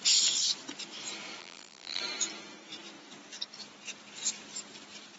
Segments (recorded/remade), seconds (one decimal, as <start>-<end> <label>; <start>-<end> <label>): 0.0-1.4 recorded; 1.4-2.0 remade; 2.0-5.2 recorded